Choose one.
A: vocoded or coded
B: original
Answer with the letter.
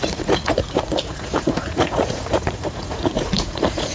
A